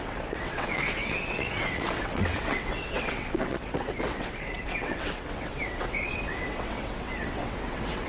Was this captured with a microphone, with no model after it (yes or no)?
no